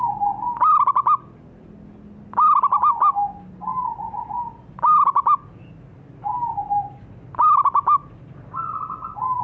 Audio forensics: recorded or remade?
recorded